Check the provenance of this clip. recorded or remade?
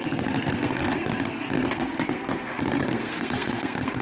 remade